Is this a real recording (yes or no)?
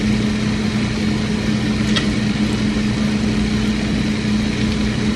yes